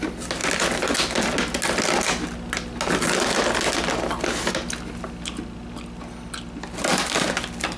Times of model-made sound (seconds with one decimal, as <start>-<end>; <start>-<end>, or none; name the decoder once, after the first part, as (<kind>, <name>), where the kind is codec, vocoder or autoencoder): none